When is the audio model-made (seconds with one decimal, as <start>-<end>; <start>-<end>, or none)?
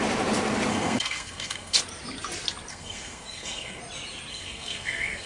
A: 0.7-1.8; 2.7-3.8; 4.3-5.3